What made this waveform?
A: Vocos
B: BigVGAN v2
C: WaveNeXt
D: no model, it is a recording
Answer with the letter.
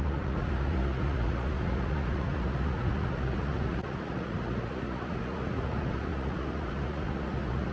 A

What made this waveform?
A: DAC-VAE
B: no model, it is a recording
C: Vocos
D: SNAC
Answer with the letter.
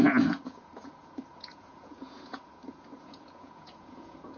C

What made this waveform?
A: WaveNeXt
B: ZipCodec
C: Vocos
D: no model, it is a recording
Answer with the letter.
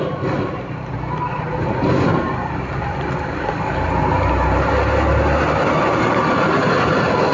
D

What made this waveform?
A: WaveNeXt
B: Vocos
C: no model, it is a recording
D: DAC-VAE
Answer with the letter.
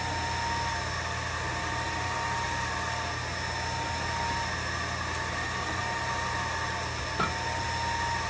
C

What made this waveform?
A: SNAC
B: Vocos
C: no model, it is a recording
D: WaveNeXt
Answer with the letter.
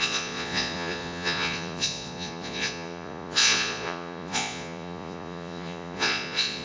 B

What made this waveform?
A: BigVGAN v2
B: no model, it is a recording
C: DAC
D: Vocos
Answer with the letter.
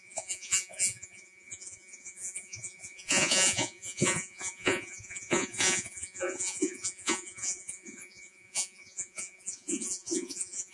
D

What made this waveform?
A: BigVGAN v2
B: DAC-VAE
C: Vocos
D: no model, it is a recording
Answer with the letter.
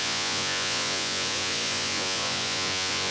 C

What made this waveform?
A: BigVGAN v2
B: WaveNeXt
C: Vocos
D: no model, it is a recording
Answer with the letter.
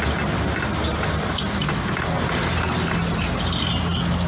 D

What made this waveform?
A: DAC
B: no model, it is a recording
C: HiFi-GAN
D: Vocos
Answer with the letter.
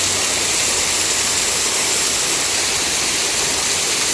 B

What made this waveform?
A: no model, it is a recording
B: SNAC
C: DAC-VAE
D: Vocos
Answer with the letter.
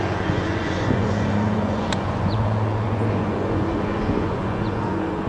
D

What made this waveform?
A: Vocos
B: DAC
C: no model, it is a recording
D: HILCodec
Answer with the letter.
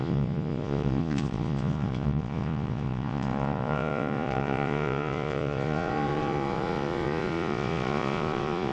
A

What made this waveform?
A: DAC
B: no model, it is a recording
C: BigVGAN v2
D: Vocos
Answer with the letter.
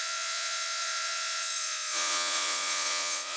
D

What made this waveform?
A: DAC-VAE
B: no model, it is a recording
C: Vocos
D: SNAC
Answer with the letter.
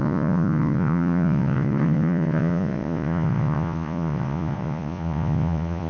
C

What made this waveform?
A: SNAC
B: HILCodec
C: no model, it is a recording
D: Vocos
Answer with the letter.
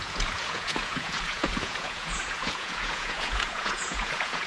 D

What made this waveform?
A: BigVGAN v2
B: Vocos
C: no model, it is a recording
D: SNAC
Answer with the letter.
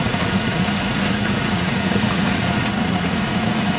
B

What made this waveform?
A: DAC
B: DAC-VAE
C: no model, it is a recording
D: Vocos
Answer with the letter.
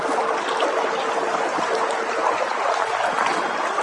C